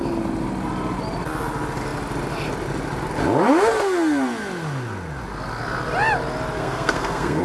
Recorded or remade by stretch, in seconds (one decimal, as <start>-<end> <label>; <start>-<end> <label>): 0.0-6.6 recorded; 6.6-7.4 remade